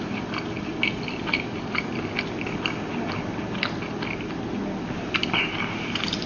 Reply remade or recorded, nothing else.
recorded